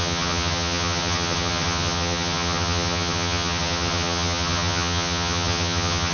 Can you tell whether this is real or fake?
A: fake